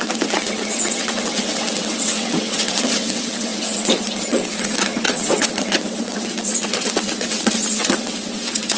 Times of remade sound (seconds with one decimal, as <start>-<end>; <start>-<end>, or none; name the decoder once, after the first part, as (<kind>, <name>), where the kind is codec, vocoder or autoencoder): 0.0-8.8 (vocoder, WaveNeXt)